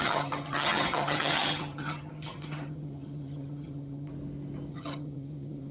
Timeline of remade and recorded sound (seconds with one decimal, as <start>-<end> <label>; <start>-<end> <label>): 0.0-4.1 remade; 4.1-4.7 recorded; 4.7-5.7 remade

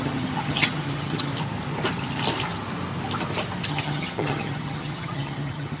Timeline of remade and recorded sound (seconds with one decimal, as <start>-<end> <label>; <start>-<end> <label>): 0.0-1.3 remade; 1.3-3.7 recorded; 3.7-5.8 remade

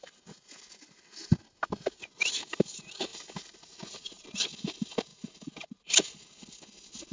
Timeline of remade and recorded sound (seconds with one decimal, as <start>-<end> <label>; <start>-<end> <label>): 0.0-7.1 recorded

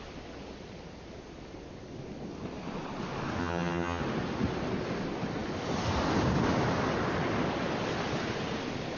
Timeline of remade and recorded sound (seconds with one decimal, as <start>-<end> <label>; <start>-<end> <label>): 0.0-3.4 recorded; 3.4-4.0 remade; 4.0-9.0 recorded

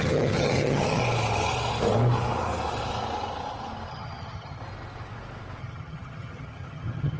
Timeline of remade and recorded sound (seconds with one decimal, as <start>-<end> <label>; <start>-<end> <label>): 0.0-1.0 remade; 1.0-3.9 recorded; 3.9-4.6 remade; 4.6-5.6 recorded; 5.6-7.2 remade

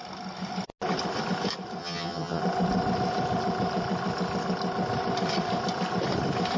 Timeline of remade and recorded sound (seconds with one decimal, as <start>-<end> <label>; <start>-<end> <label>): 0.0-1.8 recorded; 1.8-2.4 remade; 2.4-6.6 recorded